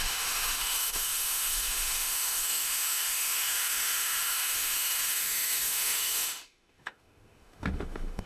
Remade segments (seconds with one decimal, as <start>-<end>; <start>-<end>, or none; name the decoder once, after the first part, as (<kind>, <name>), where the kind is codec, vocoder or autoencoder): 0.0-8.3 (autoencoder, DAC-VAE)